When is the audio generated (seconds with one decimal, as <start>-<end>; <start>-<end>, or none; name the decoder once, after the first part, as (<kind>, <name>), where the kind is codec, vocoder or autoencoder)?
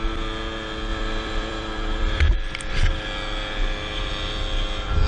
0.9-2.2 (vocoder, BigVGAN v2)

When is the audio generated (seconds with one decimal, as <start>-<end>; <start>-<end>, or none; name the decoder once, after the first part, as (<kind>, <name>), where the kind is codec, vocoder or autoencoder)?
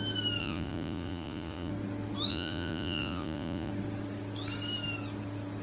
0.4-1.7 (vocoder, Vocos); 2.3-3.7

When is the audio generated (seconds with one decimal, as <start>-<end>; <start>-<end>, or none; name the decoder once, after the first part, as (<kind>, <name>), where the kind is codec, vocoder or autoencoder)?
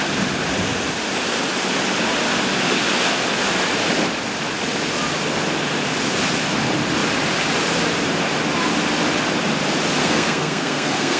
10.0-11.2 (codec, SNAC)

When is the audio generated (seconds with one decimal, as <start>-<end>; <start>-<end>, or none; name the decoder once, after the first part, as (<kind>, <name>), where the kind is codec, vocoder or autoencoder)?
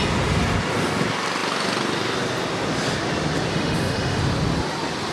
3.5-4.2 (autoencoder, DAC-VAE)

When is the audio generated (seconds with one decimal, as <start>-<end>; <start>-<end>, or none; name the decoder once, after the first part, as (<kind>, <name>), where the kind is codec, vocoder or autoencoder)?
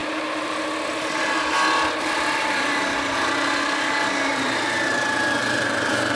0.0-1.1 (vocoder, BigVGAN v2); 4.3-6.2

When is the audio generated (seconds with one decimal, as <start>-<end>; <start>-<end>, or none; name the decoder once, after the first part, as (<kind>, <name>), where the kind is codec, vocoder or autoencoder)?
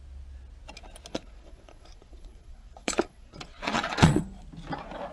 1.1-4.2 (vocoder, Vocos)